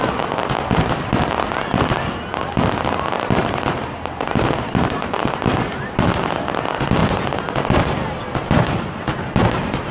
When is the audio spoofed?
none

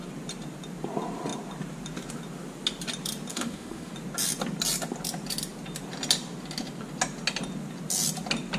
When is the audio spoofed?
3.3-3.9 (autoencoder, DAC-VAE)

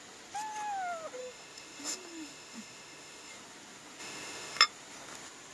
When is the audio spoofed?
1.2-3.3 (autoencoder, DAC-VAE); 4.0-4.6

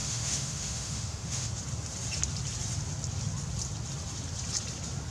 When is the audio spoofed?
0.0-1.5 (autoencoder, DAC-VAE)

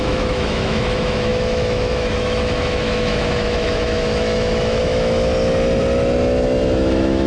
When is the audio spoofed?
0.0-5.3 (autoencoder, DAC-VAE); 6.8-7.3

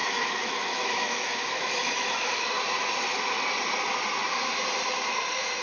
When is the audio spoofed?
0.0-2.5 (autoencoder, DAC-VAE)

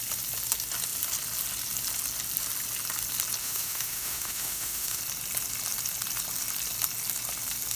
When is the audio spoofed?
3.4-5.0 (autoencoder, DAC-VAE)

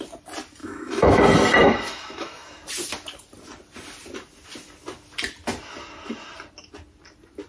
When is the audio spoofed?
0.6-1.2 (autoencoder, DAC-VAE); 1.6-2.6